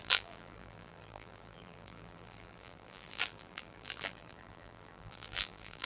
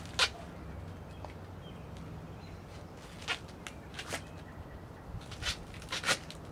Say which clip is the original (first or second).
second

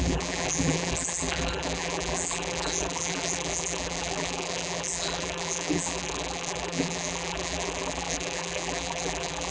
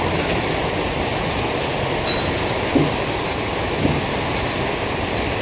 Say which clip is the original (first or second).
second